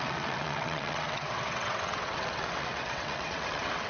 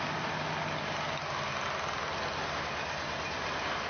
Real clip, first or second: second